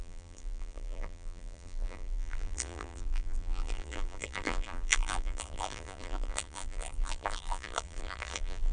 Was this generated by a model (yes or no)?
yes